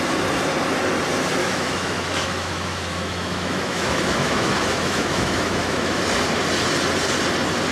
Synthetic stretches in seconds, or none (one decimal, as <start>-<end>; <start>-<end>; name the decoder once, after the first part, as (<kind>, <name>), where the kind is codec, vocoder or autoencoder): 1.4-6.0 (autoencoder, DAC-VAE)